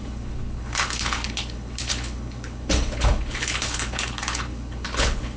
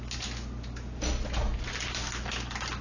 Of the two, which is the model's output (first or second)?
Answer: first